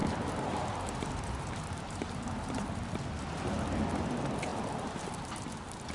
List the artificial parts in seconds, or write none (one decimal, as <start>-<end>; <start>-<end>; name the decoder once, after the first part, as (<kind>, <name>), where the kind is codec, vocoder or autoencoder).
0.0-2.8 (vocoder, BigVGAN v2); 4.5-5.9